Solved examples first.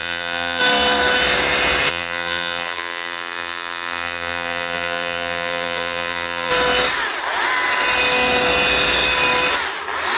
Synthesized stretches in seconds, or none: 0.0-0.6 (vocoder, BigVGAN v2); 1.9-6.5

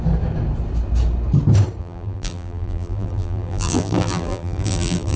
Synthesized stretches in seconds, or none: 1.8-5.2 (vocoder, BigVGAN v2)